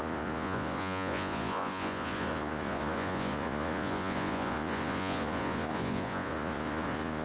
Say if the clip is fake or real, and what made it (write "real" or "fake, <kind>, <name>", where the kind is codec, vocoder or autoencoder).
fake, vocoder, Vocos